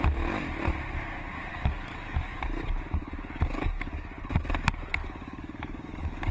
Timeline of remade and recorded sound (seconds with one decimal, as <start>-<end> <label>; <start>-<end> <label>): 0.0-1.5 recorded; 1.5-2.4 remade; 2.4-3.0 recorded; 3.0-4.1 remade; 4.1-5.0 recorded; 5.0-6.3 remade